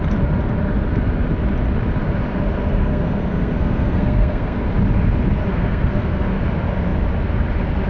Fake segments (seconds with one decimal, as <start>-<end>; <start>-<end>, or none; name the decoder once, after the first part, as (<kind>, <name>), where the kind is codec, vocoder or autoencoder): 2.7-4.7 (codec, SNAC); 5.5-6.4